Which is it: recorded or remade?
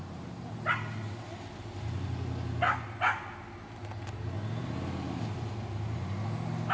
recorded